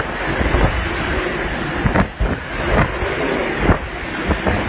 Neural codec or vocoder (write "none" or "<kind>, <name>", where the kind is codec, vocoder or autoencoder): none